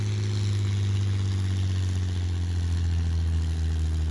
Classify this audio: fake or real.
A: real